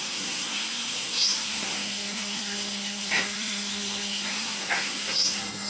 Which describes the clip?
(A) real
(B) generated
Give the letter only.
B